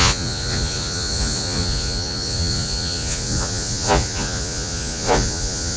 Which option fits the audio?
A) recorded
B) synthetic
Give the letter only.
B